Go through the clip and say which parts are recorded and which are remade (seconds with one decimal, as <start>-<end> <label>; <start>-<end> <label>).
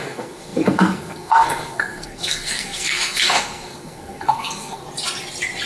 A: 0.0-4.8 remade; 4.8-5.7 recorded